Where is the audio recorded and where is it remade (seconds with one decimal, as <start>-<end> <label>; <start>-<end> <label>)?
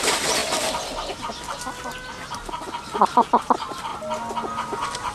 0.0-0.4 remade; 0.4-3.4 recorded; 3.4-3.9 remade; 3.9-5.1 recorded